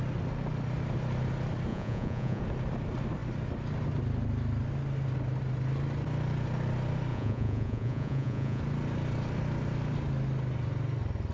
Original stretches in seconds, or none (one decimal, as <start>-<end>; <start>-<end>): 0.0-1.7; 2.4-7.1; 8.6-11.3